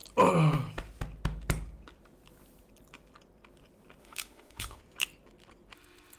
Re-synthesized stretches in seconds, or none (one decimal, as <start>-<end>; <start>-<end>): 4.0-4.8